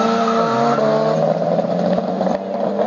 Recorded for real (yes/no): yes